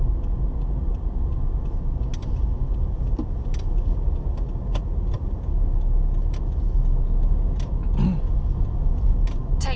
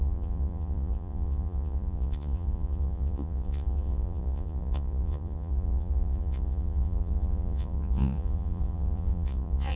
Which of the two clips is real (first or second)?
first